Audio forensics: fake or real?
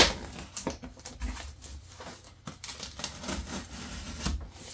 real